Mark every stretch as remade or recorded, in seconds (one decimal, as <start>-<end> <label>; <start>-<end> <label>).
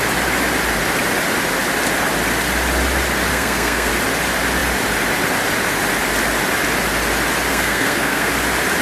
0.0-3.3 recorded; 3.3-3.9 remade; 3.9-7.5 recorded; 7.5-8.3 remade; 8.3-8.8 recorded